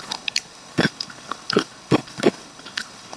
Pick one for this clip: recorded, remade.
remade